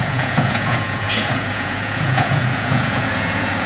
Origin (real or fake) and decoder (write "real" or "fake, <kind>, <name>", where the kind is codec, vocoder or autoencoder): fake, vocoder, Vocos